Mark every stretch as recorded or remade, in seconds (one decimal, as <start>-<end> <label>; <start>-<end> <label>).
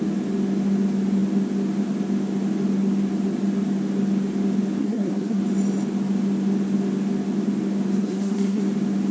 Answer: 0.0-4.8 recorded; 4.8-5.4 remade; 5.4-8.0 recorded; 8.0-8.6 remade; 8.6-9.1 recorded